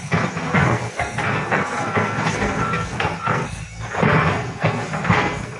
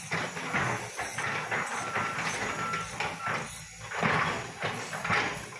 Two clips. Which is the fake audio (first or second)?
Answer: first